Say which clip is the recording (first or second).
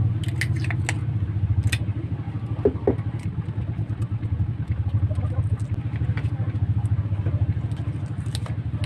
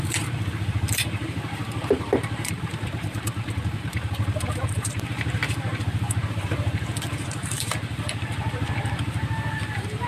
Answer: first